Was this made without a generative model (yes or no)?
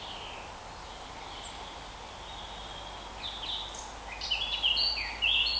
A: yes